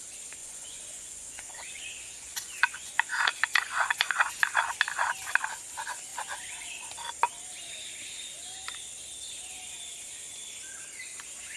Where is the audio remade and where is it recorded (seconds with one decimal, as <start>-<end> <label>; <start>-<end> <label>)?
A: 0.0-0.4 recorded; 0.4-4.4 remade; 4.4-11.6 recorded